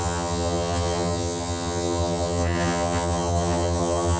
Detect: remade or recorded remade